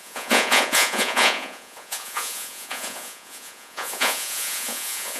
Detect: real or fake fake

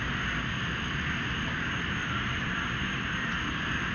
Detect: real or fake real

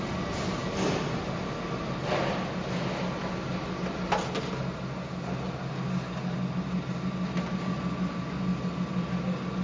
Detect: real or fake real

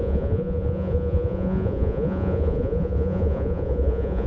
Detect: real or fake fake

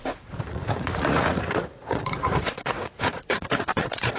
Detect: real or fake fake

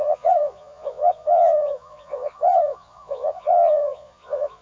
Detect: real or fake fake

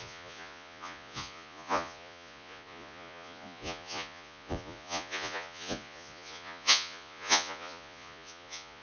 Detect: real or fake fake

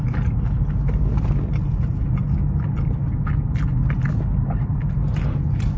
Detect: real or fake real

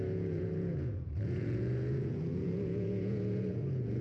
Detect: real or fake fake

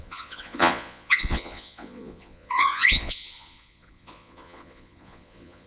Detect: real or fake fake